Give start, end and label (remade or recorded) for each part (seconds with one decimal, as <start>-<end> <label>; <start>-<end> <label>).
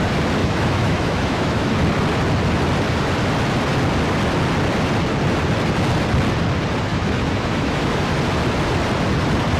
0.0-0.4 recorded; 0.4-1.8 remade; 1.8-6.9 recorded; 6.9-8.0 remade; 8.0-9.6 recorded